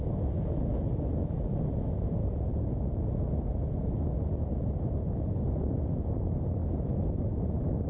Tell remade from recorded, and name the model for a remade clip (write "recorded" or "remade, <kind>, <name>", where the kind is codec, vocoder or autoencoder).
recorded